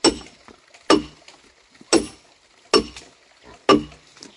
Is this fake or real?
real